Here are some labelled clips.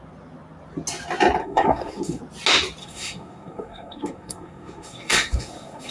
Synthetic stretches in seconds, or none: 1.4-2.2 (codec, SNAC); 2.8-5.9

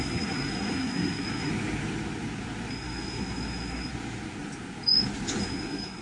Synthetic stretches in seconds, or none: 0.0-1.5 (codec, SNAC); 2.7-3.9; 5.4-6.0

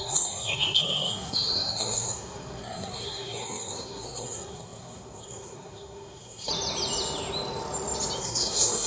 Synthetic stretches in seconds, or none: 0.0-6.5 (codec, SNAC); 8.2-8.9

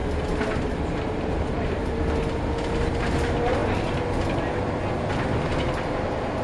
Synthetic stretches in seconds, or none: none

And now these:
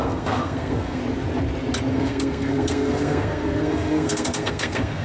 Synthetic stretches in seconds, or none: 0.0-1.0 (codec, SNAC); 1.9-5.0

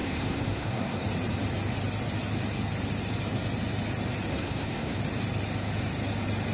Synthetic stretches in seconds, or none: 0.0-1.0 (codec, SNAC); 4.3-5.0

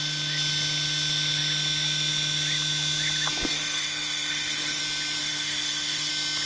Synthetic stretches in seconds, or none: 3.5-4.8 (codec, SNAC); 5.2-6.1

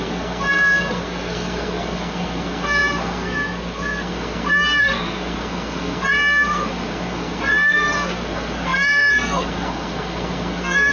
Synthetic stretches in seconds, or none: 0.0-10.9 (codec, SNAC)